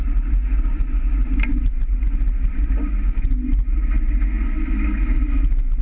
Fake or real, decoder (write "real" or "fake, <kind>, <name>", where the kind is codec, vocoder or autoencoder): real